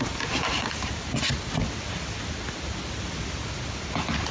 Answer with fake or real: real